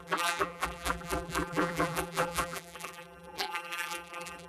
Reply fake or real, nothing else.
fake